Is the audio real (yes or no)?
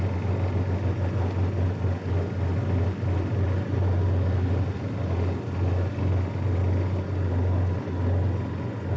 yes